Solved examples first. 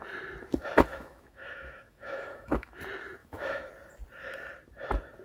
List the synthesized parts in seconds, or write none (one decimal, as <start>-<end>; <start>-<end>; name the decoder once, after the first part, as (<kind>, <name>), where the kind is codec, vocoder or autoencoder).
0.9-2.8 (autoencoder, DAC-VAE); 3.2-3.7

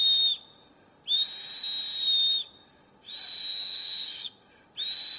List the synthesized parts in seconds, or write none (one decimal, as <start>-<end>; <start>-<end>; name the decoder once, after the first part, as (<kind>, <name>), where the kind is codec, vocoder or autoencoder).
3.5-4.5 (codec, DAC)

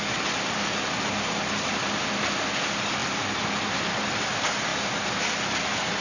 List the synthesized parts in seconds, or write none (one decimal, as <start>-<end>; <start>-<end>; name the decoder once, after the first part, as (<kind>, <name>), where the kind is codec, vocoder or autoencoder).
none

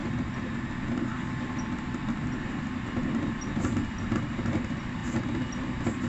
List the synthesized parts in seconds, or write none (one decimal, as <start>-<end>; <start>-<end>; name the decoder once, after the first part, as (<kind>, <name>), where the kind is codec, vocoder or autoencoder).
none